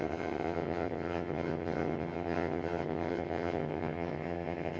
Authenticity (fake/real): fake